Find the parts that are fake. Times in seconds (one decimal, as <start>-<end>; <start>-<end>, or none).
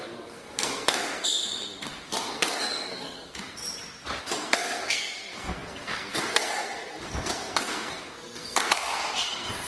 0.0-3.6; 4.2-9.7